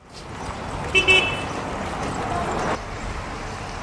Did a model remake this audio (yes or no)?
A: no